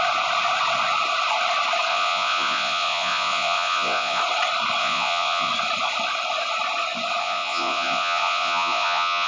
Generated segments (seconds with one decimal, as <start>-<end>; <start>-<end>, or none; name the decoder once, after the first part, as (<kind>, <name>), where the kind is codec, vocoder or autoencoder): 1.9-4.2 (vocoder, Vocos); 4.8-5.5; 7.2-9.3

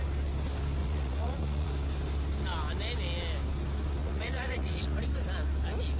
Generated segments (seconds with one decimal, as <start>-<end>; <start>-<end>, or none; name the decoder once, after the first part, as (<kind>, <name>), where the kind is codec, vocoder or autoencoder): 0.8-1.7 (vocoder, Vocos); 4.0-5.0

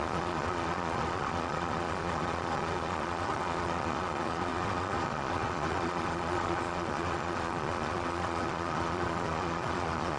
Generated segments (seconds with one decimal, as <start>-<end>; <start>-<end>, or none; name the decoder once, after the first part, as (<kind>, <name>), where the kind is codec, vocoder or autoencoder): 0.0-10.2 (vocoder, Vocos)

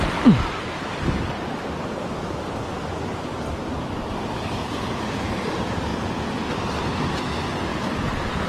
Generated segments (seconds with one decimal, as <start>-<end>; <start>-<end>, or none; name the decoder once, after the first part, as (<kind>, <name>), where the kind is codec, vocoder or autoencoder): 4.6-5.2 (vocoder, Vocos); 5.9-6.5; 7.7-8.5

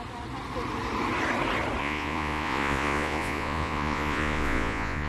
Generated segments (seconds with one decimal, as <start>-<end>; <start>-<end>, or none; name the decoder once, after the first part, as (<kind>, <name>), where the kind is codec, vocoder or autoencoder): 1.8-5.1 (vocoder, Vocos)

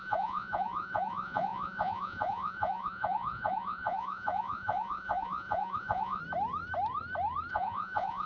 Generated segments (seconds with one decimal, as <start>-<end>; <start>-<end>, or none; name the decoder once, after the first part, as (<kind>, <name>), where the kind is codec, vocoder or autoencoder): 0.0-6.2 (vocoder, Vocos); 7.5-8.3